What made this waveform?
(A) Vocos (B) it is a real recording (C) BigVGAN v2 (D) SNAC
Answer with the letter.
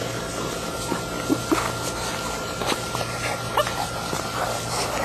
B